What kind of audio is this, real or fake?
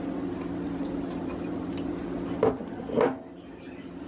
real